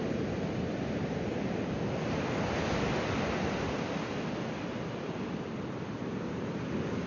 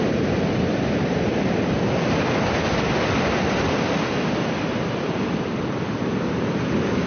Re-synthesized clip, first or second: second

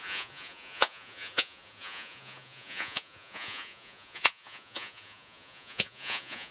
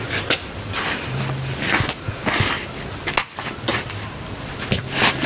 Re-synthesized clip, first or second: first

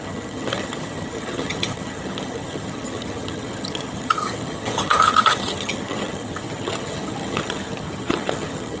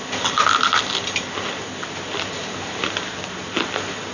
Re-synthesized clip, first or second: first